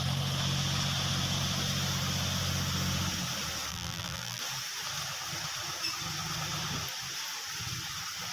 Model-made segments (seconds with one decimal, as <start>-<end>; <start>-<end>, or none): 3.7-4.4